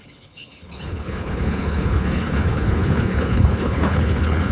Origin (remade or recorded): remade